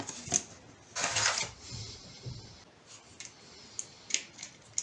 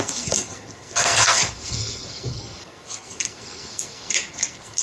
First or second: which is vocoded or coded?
second